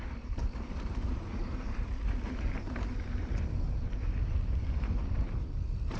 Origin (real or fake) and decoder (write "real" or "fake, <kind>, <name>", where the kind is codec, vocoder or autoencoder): fake, vocoder, BigVGAN v2